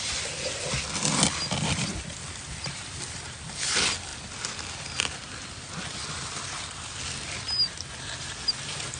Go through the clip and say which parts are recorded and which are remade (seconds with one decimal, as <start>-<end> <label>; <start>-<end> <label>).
0.0-9.0 recorded